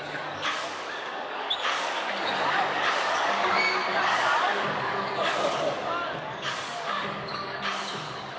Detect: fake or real fake